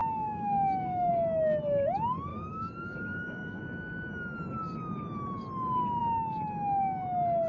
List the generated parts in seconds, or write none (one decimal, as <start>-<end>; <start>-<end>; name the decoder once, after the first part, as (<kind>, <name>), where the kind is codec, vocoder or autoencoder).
0.0-1.1 (codec, DAC); 2.3-3.6